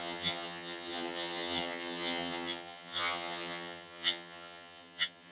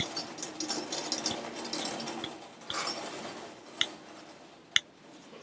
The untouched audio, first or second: second